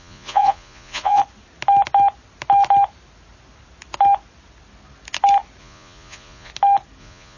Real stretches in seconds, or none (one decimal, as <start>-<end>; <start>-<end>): 1.2-5.6; 6.5-7.0